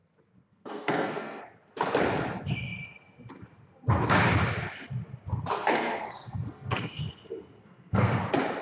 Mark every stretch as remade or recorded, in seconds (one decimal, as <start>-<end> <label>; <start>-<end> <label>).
0.0-0.4 recorded; 0.4-1.4 remade; 1.4-5.5 recorded; 5.5-7.0 remade; 7.0-7.6 recorded; 7.6-8.2 remade; 8.2-8.6 recorded